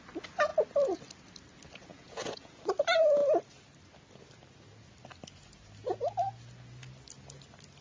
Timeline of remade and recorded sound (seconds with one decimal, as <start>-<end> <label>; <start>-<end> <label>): 0.0-1.9 recorded; 1.9-2.6 remade; 2.6-7.8 recorded